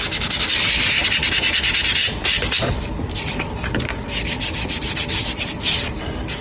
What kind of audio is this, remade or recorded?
recorded